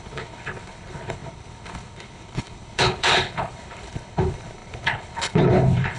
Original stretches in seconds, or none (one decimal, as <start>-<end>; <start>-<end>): none